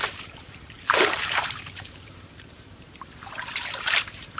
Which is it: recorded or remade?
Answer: remade